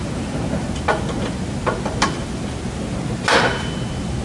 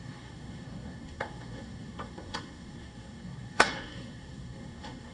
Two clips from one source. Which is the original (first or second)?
first